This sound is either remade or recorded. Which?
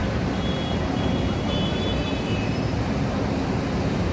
remade